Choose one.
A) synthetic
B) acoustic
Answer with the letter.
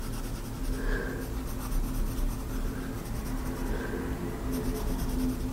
B